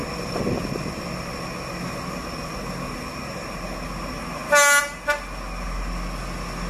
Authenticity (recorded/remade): recorded